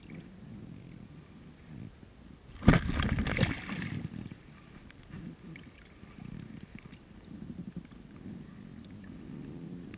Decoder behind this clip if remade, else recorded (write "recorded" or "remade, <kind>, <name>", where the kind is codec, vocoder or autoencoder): recorded